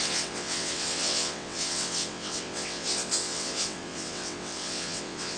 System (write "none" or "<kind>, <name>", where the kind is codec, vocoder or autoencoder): vocoder, WaveNeXt